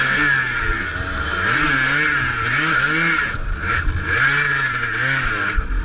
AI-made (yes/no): no